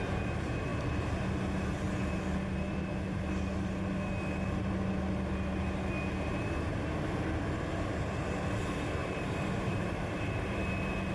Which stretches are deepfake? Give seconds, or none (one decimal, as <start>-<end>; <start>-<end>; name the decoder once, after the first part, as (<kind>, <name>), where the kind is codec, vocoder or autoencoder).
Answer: 9.0-10.6 (vocoder, BigVGAN v2)